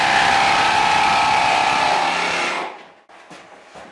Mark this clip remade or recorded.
recorded